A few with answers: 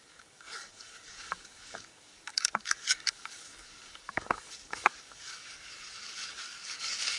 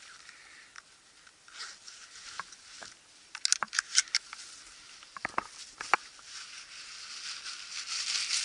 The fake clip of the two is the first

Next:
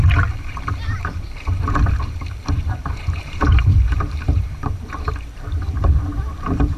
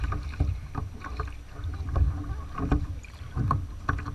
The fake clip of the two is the first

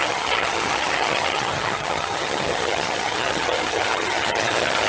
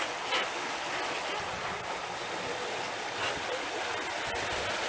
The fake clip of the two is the first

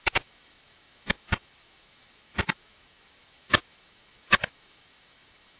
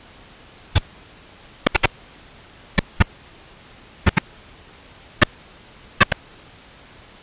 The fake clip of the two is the first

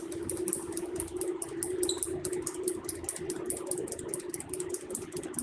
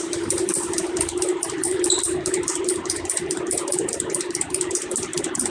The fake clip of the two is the second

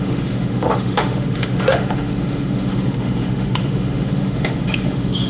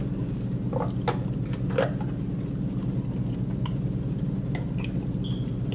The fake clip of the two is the first